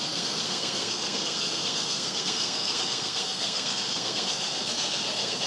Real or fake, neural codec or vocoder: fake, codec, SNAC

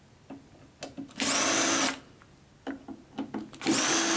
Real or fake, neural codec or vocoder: real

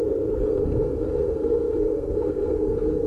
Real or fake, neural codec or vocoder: fake, codec, SNAC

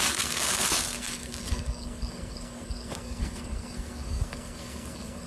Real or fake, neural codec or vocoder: fake, codec, SNAC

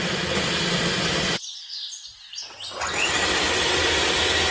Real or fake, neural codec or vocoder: real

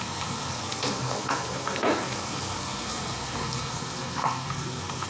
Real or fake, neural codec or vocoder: fake, codec, SNAC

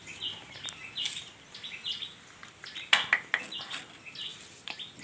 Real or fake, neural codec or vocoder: real